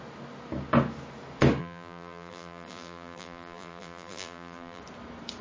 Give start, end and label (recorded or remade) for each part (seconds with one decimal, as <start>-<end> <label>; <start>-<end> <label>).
0.0-1.6 recorded; 1.6-4.8 remade; 4.8-5.4 recorded